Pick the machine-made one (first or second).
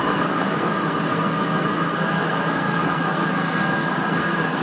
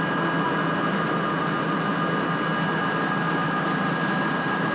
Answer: first